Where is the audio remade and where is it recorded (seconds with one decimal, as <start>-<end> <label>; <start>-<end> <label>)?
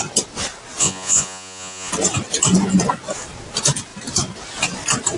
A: 0.0-0.8 recorded; 0.8-1.9 remade; 1.9-5.2 recorded